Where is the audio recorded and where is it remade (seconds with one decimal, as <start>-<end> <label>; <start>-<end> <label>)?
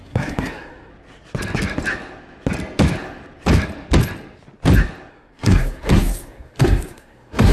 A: 0.0-0.9 remade; 0.9-5.1 recorded; 5.1-7.5 remade